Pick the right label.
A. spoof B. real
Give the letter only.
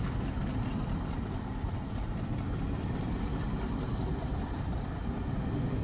A